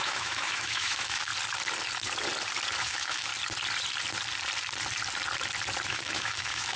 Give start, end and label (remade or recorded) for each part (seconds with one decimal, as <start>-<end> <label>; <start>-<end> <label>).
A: 0.0-1.3 remade; 1.3-2.8 recorded; 2.8-3.3 remade; 3.3-5.9 recorded; 5.9-6.8 remade